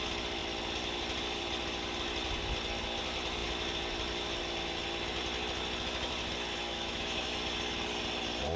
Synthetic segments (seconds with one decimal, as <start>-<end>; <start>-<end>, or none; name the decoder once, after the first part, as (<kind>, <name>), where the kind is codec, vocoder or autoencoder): 6.7-7.4 (autoencoder, DAC-VAE)